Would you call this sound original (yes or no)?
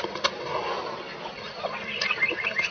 yes